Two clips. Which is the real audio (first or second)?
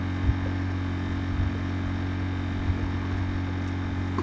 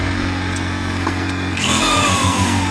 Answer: first